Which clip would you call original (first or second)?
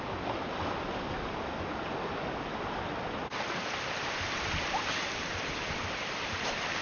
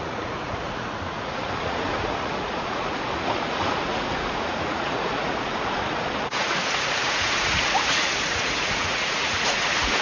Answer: first